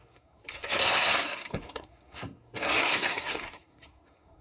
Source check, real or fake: fake